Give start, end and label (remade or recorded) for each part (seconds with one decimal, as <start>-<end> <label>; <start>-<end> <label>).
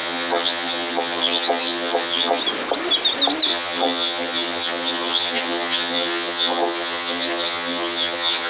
0.0-2.4 remade; 2.4-3.5 recorded; 3.5-8.5 remade